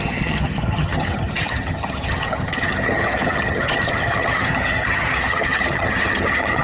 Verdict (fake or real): fake